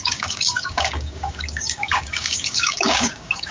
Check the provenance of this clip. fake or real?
fake